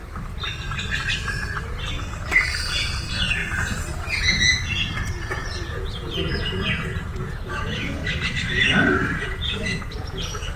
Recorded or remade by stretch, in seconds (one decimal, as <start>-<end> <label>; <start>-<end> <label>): 0.0-2.6 recorded; 2.6-8.0 remade; 8.0-9.2 recorded; 9.2-10.6 remade